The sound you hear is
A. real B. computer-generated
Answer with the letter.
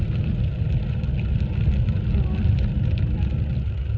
A